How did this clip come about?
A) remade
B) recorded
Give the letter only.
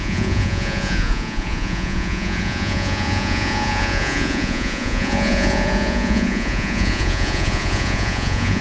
A